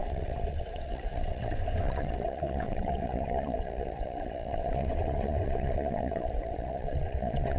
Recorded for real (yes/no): no